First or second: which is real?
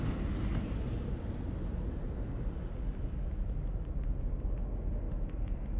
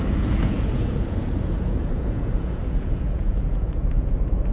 first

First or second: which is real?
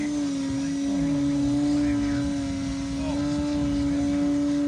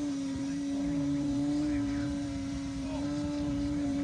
first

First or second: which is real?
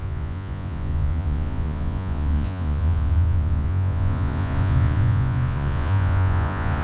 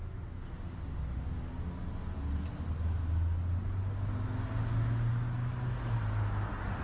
second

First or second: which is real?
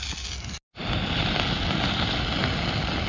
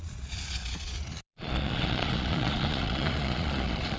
first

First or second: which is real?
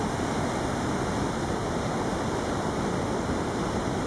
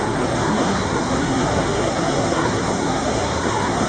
first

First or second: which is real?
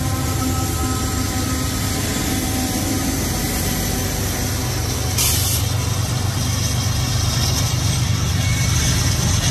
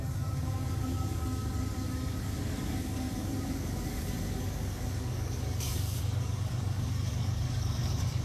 first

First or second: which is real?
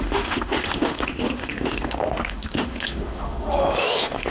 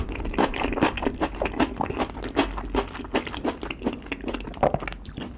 second